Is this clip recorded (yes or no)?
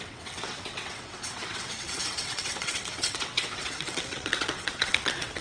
no